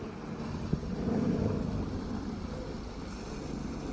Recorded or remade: recorded